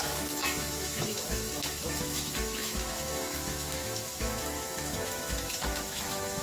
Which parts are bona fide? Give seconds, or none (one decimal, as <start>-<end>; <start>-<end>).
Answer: none